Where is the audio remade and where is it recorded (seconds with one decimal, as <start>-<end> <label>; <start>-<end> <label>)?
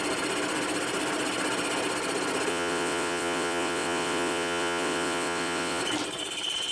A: 0.0-2.5 recorded; 2.5-5.8 remade; 5.8-6.7 recorded